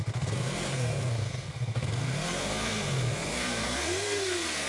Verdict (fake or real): fake